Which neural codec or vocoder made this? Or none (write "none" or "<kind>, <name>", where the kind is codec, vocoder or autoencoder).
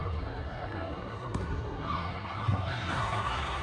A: codec, SNAC